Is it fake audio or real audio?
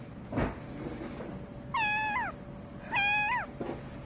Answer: real